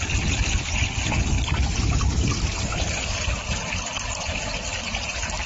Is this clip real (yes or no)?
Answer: yes